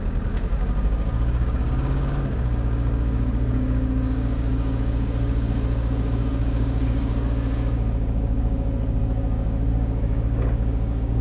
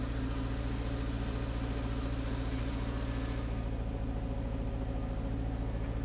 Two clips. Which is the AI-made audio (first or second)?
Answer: first